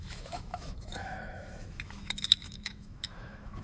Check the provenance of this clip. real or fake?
fake